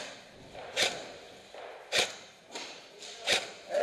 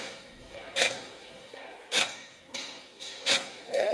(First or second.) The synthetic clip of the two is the second